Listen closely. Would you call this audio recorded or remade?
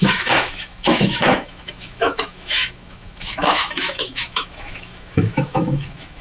remade